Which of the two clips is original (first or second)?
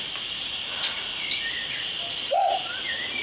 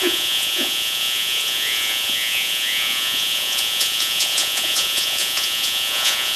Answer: first